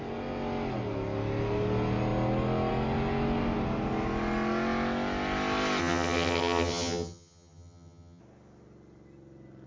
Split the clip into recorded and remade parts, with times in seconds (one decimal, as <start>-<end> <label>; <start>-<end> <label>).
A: 0.0-5.8 recorded; 5.8-8.2 remade; 8.2-9.7 recorded